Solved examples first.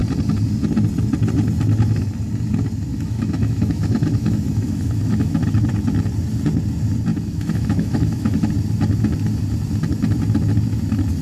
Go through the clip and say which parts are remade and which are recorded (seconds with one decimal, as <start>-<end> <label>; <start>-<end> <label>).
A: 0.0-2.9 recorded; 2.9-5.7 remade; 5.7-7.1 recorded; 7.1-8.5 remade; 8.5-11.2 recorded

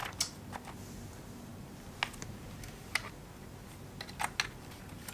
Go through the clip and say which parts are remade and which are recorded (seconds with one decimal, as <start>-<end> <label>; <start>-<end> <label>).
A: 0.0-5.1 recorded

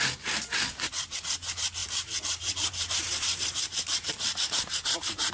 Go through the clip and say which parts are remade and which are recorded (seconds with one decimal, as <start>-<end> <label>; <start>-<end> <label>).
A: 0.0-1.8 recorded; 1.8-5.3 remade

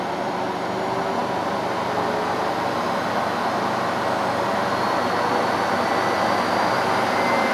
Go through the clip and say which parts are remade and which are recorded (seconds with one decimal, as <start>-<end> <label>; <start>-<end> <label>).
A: 0.0-7.5 recorded

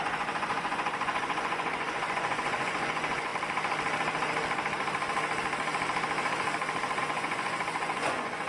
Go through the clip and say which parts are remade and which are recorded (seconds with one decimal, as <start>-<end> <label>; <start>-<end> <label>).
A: 0.0-3.3 remade; 3.3-7.0 recorded; 7.0-8.5 remade